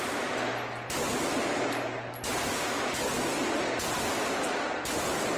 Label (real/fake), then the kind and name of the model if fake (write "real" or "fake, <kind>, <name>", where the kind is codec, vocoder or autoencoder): real